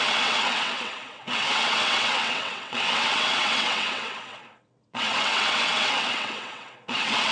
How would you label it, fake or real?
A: fake